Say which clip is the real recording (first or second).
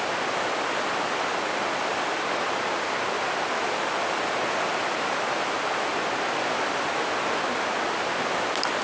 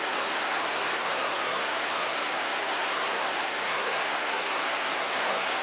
first